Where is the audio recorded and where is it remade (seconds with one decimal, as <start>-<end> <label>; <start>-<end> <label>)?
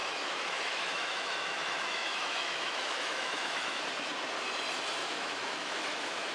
0.0-3.8 remade; 3.8-5.0 recorded; 5.0-6.3 remade